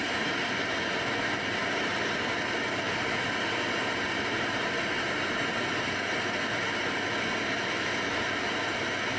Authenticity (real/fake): real